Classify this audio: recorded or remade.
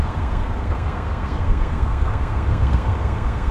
remade